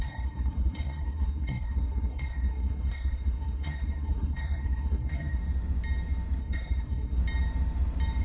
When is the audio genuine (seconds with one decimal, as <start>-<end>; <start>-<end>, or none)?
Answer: 5.4-6.4; 7.2-8.2